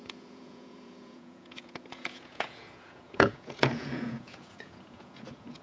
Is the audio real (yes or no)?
no